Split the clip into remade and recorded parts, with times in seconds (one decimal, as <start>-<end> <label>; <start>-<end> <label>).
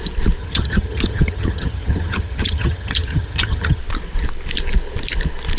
0.0-0.4 recorded; 0.4-3.8 remade; 3.8-5.6 recorded